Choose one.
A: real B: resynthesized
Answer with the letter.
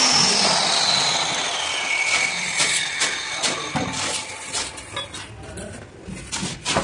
A